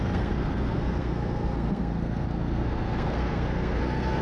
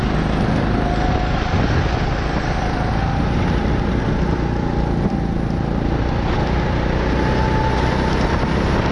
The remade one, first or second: first